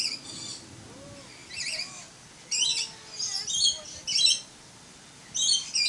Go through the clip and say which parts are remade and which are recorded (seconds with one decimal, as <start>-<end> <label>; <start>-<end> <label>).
0.0-5.9 recorded